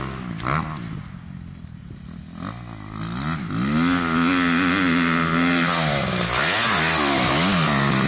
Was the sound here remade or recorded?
recorded